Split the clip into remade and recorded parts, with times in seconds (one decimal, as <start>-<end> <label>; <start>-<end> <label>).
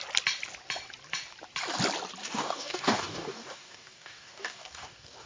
0.0-2.2 recorded; 2.2-5.3 remade